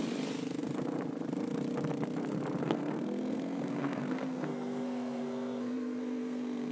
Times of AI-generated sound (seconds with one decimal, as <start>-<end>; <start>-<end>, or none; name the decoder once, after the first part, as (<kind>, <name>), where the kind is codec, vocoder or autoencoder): 2.6-6.7 (codec, SNAC)